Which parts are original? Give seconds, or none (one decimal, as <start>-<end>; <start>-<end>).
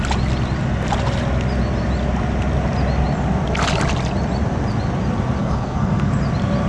0.0-5.4; 6.1-6.7